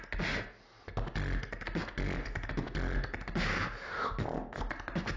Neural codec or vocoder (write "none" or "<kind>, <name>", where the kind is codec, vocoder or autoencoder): none